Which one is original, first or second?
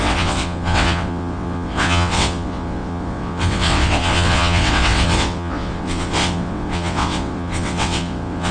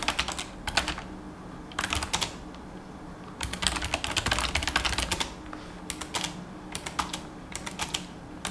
second